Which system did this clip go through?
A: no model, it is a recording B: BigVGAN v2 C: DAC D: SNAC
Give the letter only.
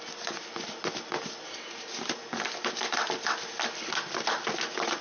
A